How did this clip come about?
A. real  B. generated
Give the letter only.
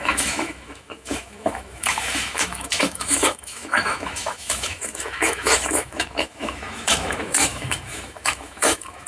B